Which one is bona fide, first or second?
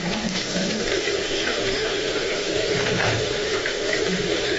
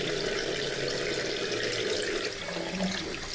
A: second